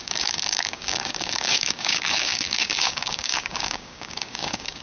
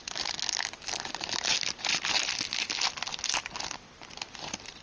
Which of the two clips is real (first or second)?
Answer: second